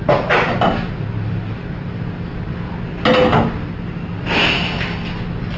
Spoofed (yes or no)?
no